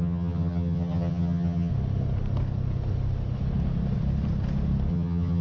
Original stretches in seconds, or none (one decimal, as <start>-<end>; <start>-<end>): 1.7-4.9